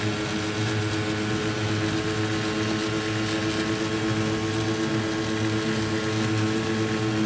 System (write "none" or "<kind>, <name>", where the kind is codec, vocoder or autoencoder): none